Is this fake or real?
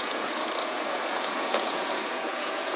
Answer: fake